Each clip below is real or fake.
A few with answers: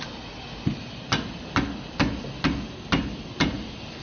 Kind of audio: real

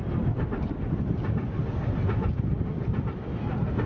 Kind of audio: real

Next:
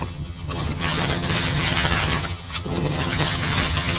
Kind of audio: fake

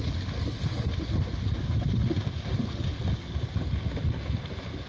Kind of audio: real